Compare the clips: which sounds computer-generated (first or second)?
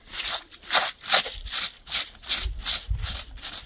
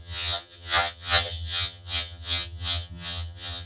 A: second